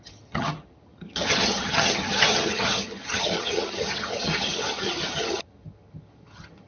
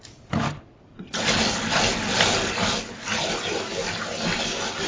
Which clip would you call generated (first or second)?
first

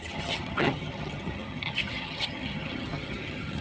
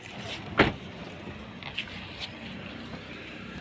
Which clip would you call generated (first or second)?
first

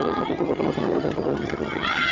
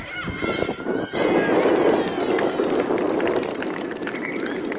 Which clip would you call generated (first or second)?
first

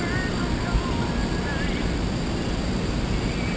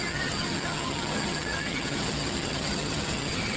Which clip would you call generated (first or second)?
second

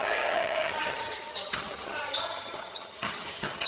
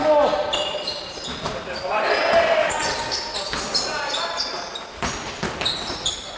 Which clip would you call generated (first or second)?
first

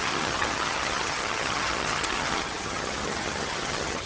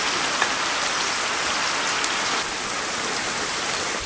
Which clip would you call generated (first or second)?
first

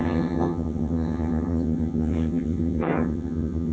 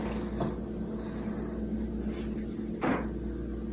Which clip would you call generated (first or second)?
first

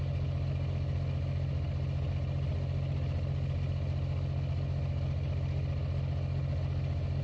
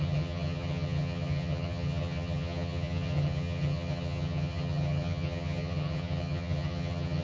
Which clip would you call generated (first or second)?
second